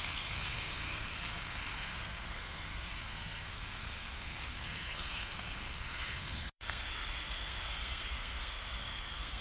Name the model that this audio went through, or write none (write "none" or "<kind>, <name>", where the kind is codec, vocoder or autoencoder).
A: codec, SNAC